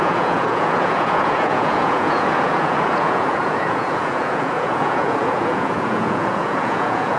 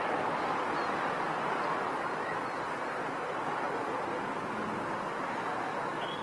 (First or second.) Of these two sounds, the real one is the second